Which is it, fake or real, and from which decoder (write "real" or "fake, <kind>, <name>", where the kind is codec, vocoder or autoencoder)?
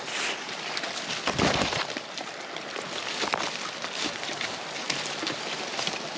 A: real